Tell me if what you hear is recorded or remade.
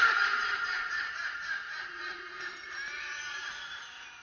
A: remade